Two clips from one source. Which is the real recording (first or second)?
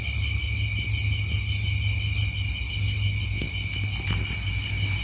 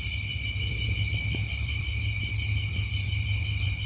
first